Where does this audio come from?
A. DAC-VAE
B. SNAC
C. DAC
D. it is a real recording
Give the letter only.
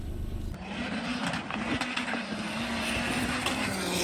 D